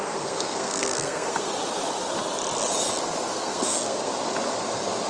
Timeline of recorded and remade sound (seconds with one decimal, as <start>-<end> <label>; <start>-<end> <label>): 0.0-1.5 remade; 1.5-3.3 recorded; 3.3-4.1 remade; 4.1-5.1 recorded